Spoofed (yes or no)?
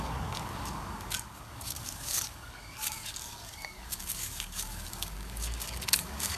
yes